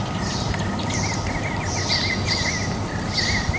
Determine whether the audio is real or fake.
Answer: real